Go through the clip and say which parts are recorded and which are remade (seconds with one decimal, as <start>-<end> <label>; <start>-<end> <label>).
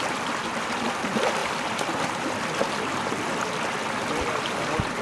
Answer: 0.0-1.4 remade; 1.4-4.4 recorded; 4.4-5.0 remade